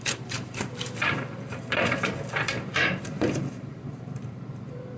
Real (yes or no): no